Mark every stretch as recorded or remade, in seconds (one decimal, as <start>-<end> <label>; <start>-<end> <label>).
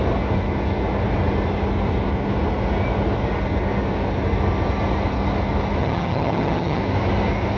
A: 0.0-5.8 recorded; 5.8-6.8 remade; 6.8-7.6 recorded